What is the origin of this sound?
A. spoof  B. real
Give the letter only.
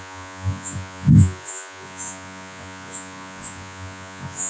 A